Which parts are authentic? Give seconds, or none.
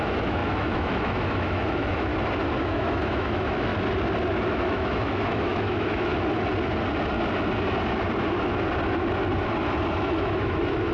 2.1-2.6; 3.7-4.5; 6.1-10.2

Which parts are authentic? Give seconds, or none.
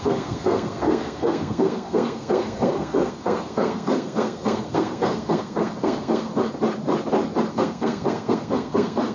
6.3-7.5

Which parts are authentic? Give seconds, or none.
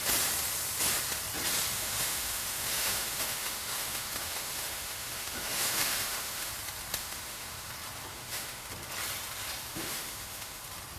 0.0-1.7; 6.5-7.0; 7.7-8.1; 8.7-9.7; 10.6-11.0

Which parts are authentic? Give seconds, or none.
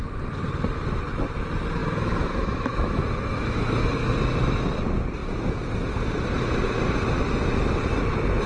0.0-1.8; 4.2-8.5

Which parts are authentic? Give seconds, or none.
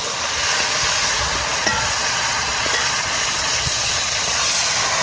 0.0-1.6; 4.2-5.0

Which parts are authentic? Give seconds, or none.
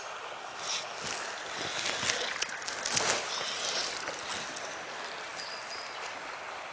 0.0-6.7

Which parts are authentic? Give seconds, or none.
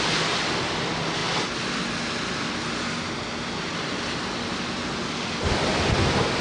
0.0-6.4